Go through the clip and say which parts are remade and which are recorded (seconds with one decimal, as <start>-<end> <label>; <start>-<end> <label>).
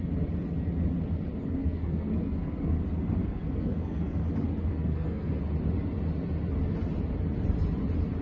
0.0-1.6 recorded; 1.6-2.8 remade; 2.8-3.2 recorded; 3.2-4.2 remade; 4.2-4.7 recorded; 4.7-5.4 remade; 5.4-8.2 recorded